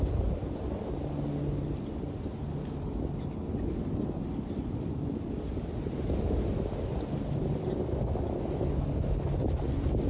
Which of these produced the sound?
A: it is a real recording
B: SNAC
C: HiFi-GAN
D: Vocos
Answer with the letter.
A